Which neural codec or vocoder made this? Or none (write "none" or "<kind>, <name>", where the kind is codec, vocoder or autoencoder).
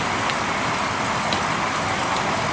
none